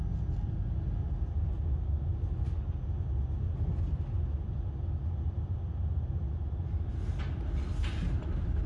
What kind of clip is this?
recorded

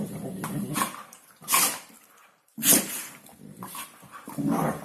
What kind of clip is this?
remade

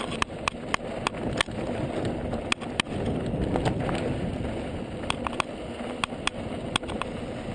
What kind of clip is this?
recorded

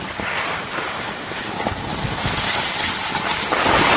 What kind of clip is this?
recorded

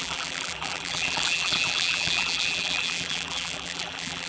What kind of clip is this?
remade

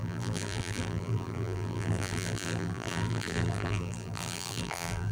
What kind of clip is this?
remade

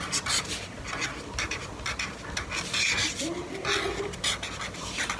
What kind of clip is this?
recorded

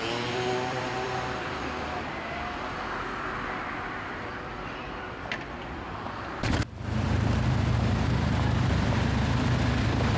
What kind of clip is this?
remade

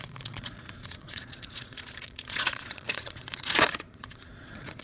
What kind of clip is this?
remade